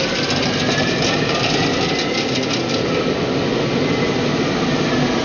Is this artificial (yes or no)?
no